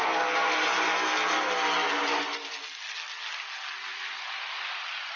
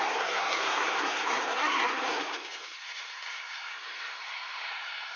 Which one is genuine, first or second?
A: first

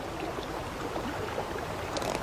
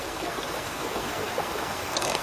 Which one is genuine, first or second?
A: first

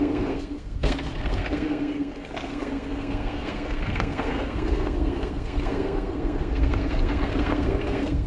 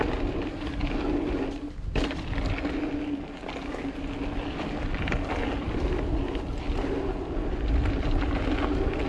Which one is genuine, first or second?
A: second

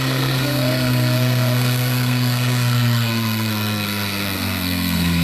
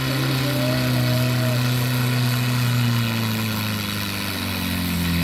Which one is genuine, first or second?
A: second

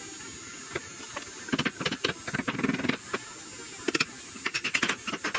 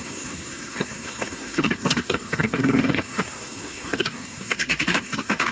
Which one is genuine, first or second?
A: first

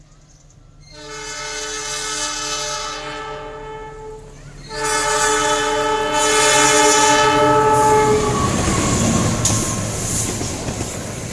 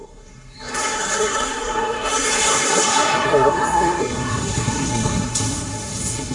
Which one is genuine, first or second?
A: first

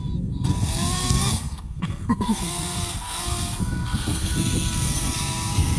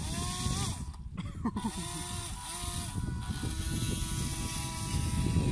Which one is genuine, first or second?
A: second